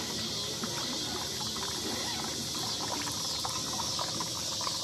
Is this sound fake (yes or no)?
no